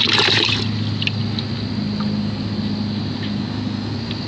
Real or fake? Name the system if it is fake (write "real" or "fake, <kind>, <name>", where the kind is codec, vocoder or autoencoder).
real